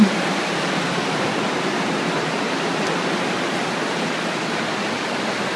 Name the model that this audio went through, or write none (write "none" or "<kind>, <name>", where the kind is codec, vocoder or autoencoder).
none